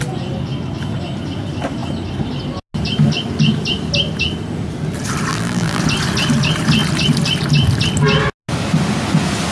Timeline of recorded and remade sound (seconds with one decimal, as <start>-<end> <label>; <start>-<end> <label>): 0.0-5.3 recorded; 5.3-5.8 remade; 5.8-9.5 recorded